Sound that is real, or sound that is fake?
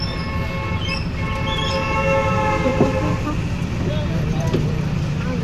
real